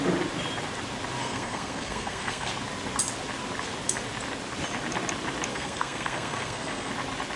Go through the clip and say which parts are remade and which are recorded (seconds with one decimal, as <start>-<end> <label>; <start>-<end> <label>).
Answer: 0.0-1.2 recorded; 1.2-2.5 remade; 2.5-5.5 recorded; 5.5-6.9 remade; 6.9-7.4 recorded